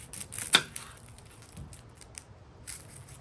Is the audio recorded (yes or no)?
yes